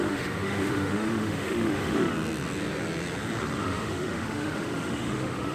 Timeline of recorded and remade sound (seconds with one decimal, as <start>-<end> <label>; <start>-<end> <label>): 0.0-2.1 remade; 2.1-3.6 recorded; 3.6-5.5 remade